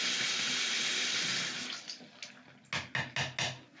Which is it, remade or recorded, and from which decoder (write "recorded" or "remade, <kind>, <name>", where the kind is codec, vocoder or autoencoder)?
recorded